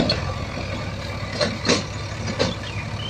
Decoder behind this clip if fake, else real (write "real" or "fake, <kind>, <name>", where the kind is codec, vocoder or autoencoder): real